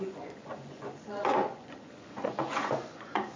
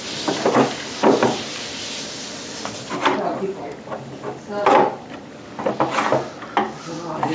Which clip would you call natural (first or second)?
second